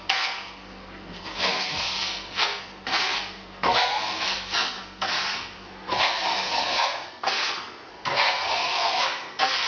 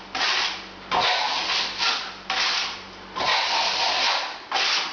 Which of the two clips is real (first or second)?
second